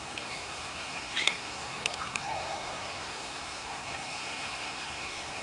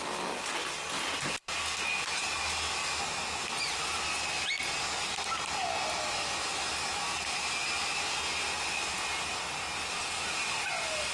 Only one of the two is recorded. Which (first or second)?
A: second